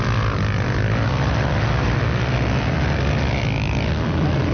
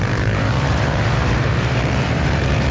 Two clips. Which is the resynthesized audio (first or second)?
second